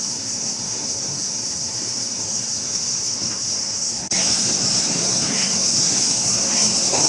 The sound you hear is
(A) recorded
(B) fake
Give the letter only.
B